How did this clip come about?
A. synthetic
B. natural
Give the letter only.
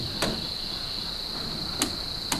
B